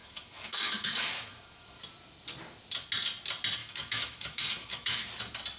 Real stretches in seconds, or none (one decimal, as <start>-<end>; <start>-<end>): 1.8-3.6; 5.1-5.6